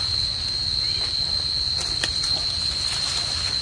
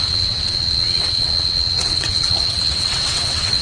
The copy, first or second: second